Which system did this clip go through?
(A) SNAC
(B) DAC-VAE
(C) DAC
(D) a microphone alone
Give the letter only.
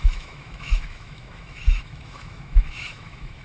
B